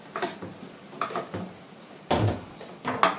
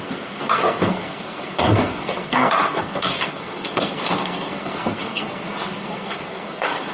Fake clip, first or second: second